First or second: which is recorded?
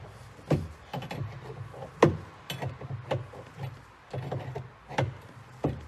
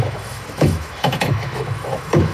first